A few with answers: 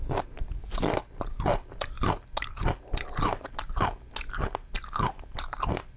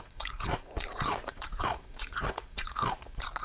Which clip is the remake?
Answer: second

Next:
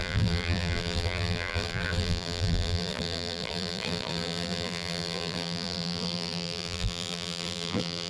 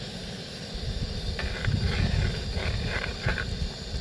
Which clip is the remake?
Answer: first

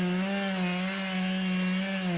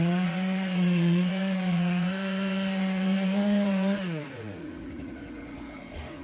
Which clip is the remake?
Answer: second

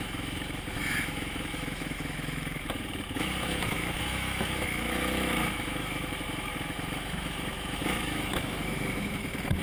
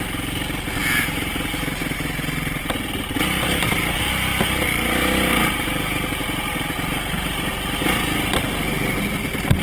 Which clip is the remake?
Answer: first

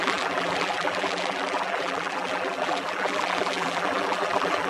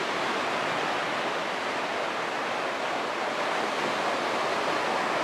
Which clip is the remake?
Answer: first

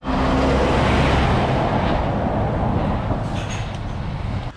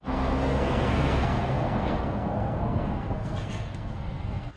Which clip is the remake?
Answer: second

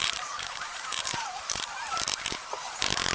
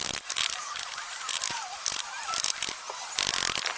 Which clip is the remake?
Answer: first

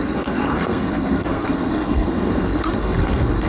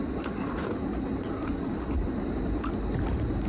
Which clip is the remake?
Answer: first